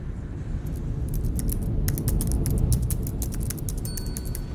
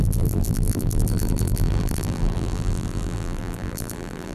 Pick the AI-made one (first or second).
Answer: second